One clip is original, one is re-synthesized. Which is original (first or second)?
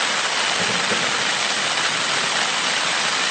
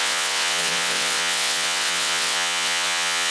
first